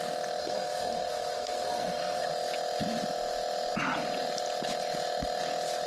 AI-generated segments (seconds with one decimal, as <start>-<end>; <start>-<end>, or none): 0.4-2.3